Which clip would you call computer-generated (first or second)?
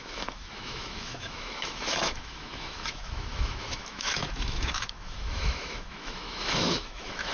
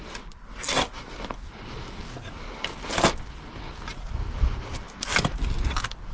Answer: first